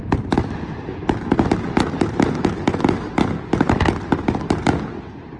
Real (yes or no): yes